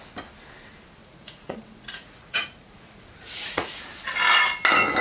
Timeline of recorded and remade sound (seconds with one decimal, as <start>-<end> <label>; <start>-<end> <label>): 0.0-1.0 recorded; 1.0-3.8 remade; 3.8-5.0 recorded